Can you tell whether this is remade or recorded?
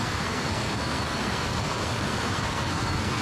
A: remade